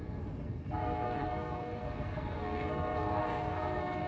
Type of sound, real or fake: fake